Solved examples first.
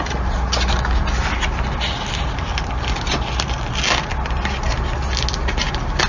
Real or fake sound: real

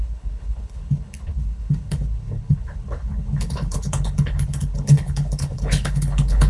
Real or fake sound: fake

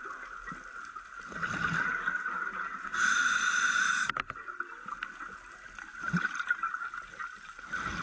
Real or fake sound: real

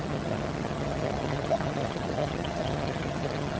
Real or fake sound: fake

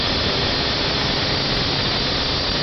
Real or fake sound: real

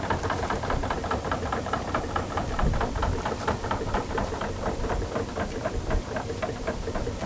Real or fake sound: fake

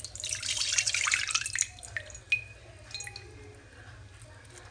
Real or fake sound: real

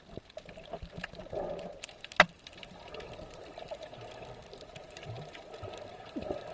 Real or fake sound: real